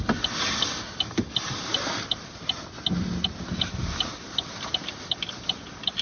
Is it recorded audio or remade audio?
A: recorded